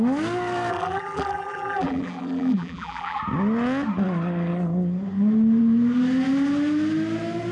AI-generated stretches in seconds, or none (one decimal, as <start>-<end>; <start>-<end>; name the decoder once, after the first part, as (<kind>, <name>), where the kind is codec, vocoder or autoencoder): 0.7-3.2 (vocoder, BigVGAN v2)